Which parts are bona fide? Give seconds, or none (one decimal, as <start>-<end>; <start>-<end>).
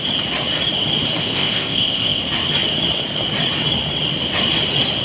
0.0-1.2; 2.2-5.0